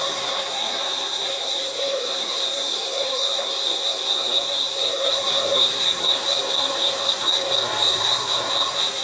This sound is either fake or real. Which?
fake